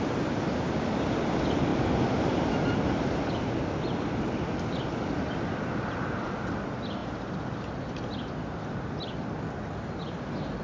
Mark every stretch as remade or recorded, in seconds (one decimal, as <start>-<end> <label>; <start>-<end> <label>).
0.0-10.6 recorded